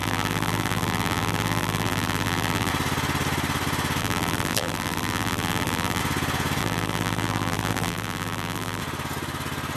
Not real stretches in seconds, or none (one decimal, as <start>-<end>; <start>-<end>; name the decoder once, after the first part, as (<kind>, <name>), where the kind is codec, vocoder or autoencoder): 0.0-2.7 (vocoder, BigVGAN v2); 4.0-6.0; 6.6-8.8